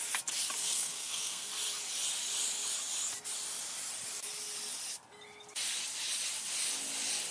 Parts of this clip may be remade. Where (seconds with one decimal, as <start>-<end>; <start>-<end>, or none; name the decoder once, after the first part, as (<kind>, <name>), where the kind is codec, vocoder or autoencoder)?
0.6-1.5 (codec, SNAC)